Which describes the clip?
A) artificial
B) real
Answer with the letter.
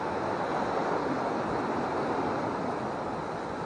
B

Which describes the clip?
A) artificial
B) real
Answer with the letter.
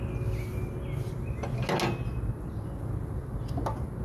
B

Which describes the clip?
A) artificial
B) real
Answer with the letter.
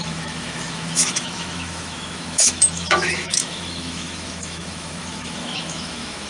A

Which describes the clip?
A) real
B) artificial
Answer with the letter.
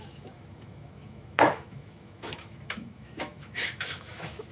B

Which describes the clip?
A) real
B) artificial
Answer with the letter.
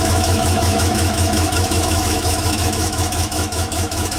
B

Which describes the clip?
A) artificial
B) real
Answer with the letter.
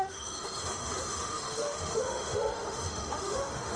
A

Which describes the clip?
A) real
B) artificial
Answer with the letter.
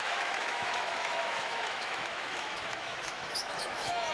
B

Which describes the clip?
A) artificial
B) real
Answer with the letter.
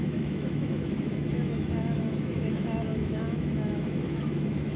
A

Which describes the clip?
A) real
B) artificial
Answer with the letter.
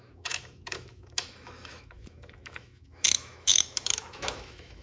B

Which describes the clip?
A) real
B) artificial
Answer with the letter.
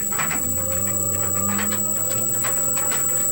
A